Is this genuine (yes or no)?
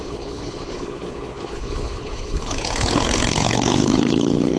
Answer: no